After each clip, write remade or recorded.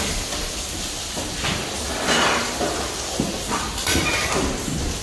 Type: recorded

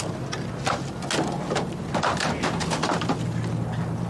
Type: recorded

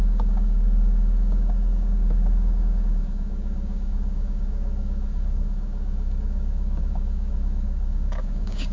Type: remade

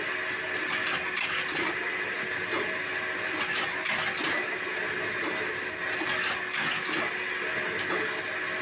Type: recorded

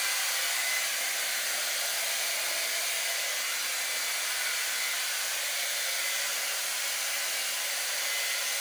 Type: recorded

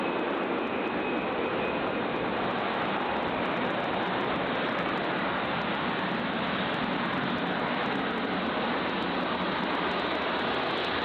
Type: recorded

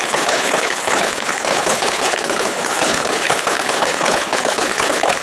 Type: remade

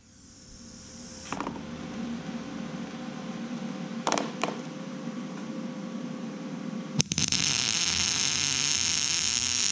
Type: remade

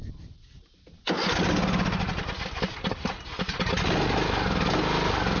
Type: recorded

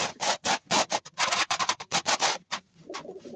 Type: remade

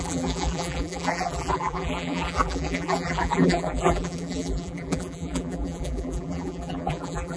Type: remade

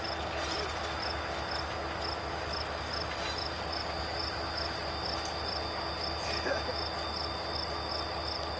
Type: recorded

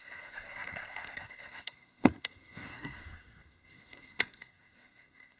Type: remade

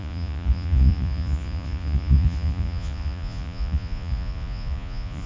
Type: remade